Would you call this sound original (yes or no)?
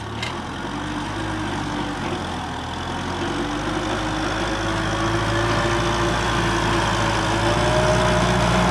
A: yes